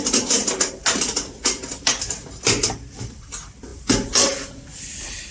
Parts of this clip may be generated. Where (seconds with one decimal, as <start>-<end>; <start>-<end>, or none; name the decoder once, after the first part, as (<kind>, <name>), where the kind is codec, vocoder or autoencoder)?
none